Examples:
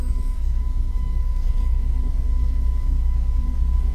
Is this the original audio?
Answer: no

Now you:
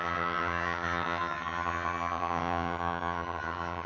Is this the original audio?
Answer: no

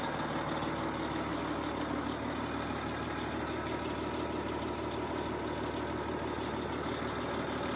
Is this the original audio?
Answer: yes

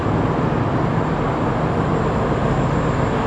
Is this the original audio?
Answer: yes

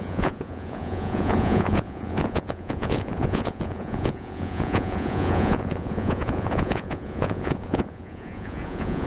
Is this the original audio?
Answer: no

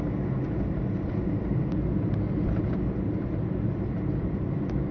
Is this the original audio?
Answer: yes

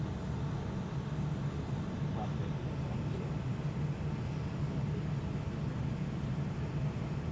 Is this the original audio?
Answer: yes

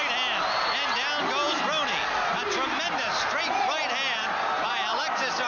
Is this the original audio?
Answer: yes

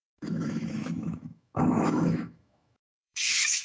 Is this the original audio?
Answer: no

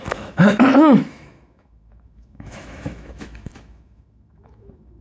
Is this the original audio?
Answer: no